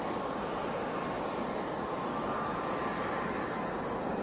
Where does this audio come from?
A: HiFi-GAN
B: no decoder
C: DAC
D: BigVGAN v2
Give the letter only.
B